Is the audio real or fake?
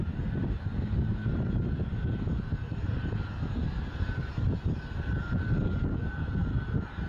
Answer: real